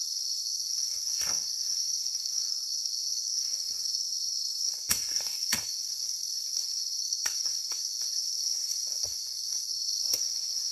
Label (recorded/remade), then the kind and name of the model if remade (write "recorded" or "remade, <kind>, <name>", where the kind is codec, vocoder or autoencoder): remade, codec, SNAC